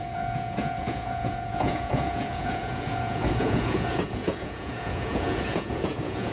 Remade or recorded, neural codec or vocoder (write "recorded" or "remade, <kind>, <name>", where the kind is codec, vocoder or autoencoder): remade, vocoder, Vocos